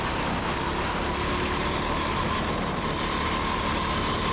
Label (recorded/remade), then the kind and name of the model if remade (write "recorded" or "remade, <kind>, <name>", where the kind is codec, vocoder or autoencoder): recorded